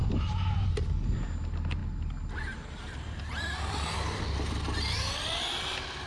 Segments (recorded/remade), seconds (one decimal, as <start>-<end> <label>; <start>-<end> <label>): 0.0-6.1 recorded